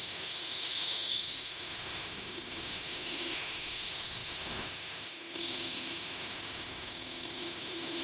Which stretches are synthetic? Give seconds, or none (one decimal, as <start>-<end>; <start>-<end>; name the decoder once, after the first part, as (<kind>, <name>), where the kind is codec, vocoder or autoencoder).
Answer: 0.0-8.0 (autoencoder, DAC-VAE)

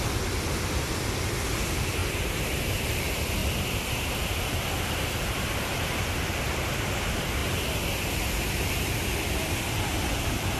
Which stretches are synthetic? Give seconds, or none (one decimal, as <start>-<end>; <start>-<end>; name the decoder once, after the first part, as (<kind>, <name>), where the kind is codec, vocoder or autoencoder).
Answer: 0.0-2.0 (vocoder, BigVGAN v2); 3.0-7.4; 10.0-10.6

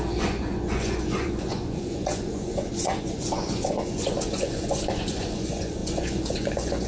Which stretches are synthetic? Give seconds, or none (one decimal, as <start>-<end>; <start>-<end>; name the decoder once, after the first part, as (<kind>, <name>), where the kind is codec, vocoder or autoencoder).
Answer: 0.0-6.9 (vocoder, Vocos)

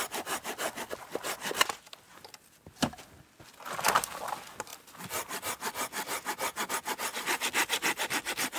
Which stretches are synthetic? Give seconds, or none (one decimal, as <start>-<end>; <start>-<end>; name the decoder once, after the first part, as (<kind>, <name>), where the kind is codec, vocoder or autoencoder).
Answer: none

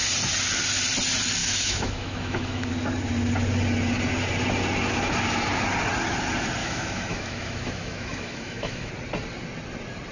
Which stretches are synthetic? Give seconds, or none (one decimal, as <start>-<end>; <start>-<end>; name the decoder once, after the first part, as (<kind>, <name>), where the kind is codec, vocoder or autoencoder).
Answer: 1.4-2.7 (autoencoder, DAC-VAE); 6.6-8.9

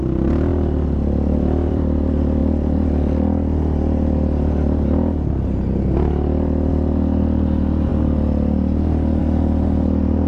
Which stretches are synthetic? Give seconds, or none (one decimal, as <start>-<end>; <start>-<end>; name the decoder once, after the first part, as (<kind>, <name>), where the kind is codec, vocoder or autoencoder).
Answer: 0.5-2.0 (vocoder, BigVGAN v2)

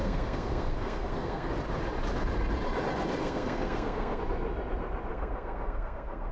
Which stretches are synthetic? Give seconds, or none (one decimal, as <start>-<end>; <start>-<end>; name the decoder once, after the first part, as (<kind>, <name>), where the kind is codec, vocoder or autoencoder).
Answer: 0.0-1.5 (codec, SNAC); 3.2-4.2; 5.1-6.3

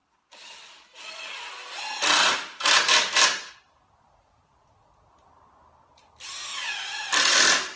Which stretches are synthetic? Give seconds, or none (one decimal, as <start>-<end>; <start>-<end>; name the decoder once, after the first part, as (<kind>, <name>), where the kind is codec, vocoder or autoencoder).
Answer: none